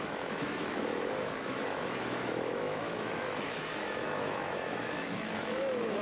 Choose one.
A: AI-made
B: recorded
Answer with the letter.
A